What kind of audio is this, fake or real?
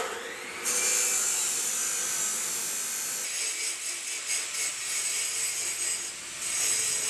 real